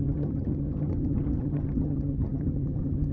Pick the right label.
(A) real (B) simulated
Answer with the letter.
B